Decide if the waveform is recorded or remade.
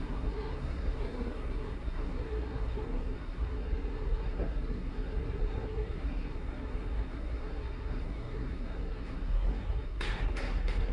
remade